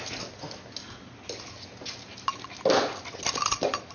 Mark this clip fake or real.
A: real